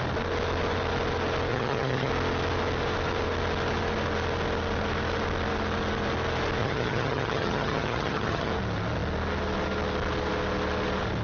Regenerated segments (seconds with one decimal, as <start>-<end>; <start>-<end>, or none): 1.5-2.1; 6.6-8.5